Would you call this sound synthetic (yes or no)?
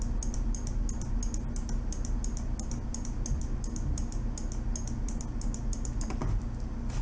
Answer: no